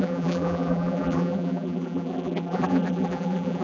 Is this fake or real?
fake